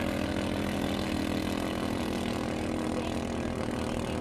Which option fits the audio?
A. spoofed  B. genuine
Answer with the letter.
B